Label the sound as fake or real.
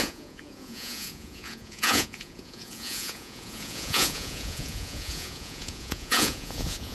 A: fake